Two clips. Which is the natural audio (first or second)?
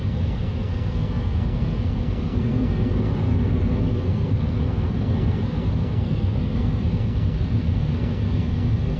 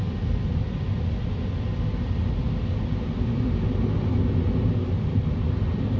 second